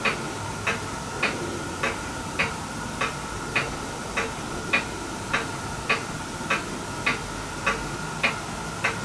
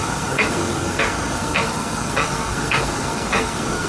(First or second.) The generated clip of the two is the second